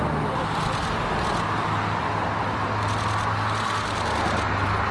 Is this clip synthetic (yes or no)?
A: no